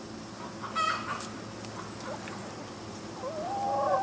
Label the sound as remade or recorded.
recorded